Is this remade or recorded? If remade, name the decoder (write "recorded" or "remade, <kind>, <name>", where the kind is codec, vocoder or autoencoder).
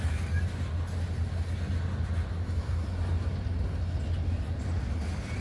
recorded